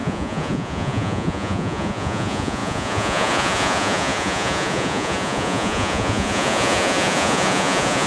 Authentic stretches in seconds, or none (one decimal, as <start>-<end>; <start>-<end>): none